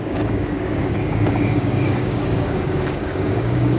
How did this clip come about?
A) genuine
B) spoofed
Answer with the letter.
B